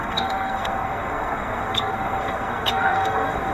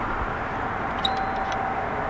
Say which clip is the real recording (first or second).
second